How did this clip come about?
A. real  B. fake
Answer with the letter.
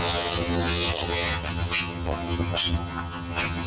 B